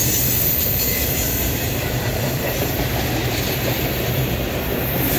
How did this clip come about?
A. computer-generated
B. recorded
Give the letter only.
A